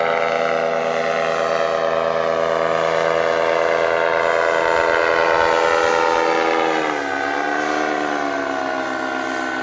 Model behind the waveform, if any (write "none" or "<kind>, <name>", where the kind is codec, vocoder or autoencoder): none